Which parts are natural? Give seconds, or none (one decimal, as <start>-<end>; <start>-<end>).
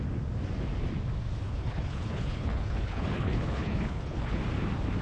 0.0-1.4; 4.4-5.0